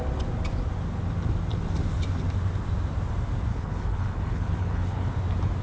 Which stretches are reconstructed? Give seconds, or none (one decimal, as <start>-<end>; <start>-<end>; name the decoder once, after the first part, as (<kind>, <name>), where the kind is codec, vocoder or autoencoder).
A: 3.5-5.1 (codec, HILCodec)